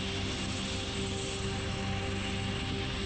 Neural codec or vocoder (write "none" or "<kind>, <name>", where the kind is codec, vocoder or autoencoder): none